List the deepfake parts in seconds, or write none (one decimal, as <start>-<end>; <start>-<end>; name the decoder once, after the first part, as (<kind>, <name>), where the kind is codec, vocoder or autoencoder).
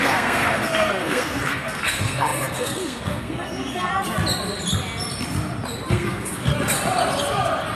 0.0-3.9 (codec, SNAC); 5.9-6.5